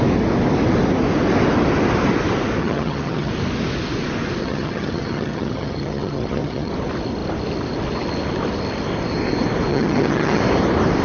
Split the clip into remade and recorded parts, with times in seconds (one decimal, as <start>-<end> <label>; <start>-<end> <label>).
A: 0.0-2.6 recorded; 2.6-3.3 remade; 3.3-4.4 recorded; 4.4-6.7 remade; 6.7-9.7 recorded; 9.7-10.4 remade; 10.4-11.0 recorded